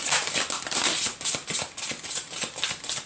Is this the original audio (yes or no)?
yes